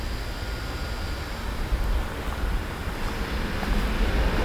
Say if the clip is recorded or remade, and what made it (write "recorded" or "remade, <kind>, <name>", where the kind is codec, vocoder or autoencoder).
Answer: recorded